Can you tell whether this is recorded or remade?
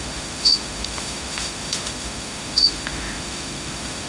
remade